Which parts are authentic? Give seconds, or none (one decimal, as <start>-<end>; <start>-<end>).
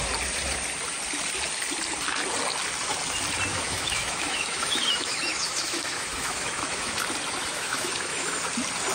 0.0-3.5; 7.0-7.4; 8.4-8.9